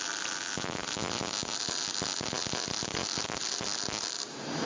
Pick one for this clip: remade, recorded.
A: recorded